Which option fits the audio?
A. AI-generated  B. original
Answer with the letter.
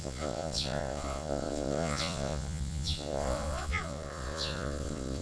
A